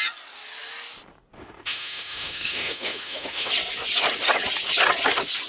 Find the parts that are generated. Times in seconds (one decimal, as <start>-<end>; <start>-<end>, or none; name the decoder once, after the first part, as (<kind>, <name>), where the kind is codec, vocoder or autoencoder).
1.4-3.5 (autoencoder, DAC-VAE)